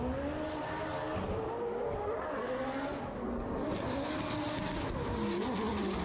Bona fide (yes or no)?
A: yes